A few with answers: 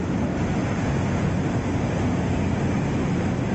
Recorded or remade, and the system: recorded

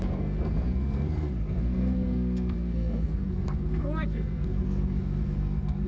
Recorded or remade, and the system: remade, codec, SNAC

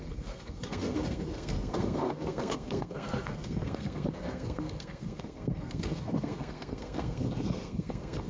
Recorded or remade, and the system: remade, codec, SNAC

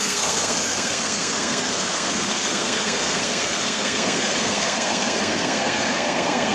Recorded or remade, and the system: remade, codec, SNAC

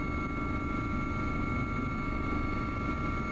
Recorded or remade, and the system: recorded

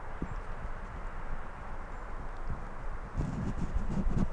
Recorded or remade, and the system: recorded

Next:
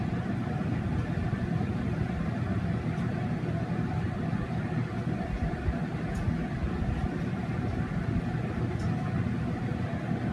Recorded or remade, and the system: recorded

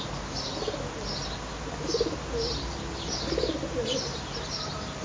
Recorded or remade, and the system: recorded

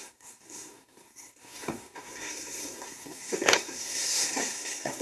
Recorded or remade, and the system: remade, codec, SNAC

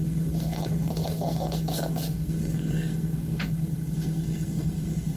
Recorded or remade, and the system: remade, codec, SNAC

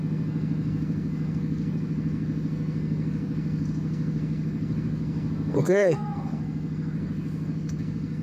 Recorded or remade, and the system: remade, codec, SNAC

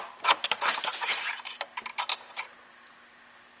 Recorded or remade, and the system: recorded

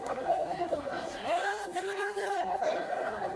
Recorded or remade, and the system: remade, codec, SNAC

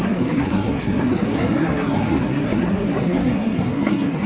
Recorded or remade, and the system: remade, codec, SNAC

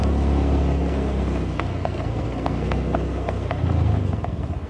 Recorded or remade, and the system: remade, codec, SNAC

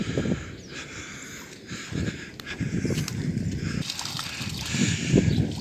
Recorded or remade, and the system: recorded